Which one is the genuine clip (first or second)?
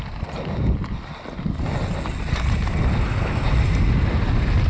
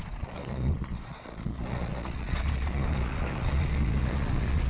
first